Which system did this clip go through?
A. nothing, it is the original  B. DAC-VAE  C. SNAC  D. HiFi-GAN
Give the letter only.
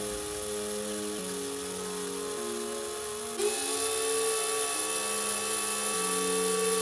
A